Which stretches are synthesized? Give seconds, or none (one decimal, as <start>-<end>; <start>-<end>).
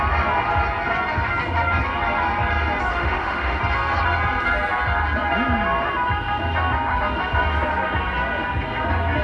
2.9-3.6